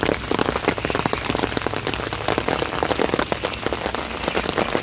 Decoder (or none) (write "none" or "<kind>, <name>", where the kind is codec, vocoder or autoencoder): none